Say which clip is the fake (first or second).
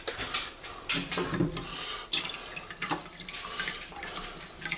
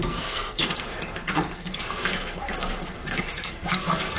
second